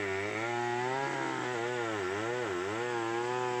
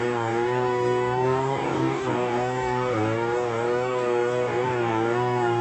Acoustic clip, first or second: first